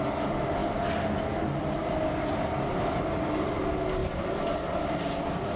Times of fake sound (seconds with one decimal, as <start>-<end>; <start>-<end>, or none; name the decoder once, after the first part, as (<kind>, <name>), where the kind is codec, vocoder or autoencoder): none